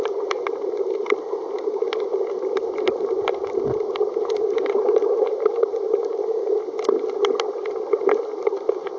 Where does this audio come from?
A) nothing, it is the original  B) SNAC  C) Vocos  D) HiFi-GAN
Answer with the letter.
A